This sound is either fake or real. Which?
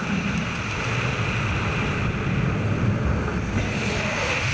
real